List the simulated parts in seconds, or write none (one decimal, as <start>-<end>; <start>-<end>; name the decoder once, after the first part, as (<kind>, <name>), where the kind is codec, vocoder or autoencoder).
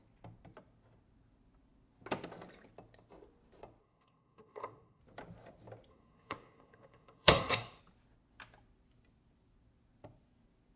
3.8-5.0 (codec, SNAC); 5.9-7.8